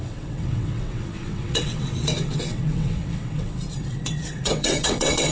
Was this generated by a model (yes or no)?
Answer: yes